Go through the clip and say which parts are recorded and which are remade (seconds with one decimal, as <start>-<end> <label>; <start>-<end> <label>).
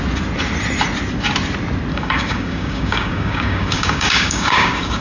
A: 0.0-1.9 recorded; 1.9-5.0 remade